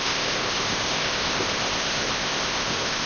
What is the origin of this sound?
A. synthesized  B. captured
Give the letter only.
A